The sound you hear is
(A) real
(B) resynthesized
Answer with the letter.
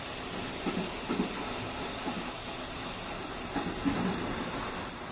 A